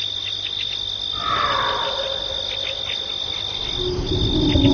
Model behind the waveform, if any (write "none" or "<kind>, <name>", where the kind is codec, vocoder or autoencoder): none